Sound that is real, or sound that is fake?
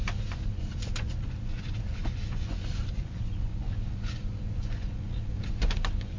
fake